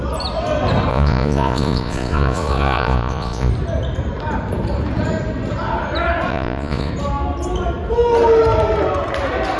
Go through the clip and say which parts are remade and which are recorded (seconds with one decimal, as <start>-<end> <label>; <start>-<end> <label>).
0.0-0.9 recorded; 0.9-3.5 remade; 3.5-6.3 recorded; 6.3-6.9 remade; 6.9-9.6 recorded